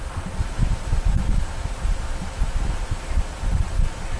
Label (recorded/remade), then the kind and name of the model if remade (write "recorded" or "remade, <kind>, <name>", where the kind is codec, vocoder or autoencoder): recorded